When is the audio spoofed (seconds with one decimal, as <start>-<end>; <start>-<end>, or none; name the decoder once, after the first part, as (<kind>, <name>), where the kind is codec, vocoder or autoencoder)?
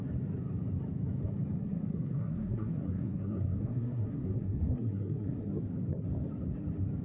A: 1.6-5.5 (codec, SNAC)